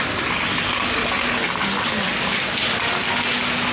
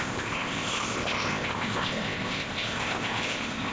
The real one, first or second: first